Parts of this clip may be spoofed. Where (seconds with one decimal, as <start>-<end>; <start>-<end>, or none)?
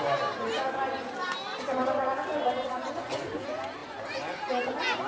none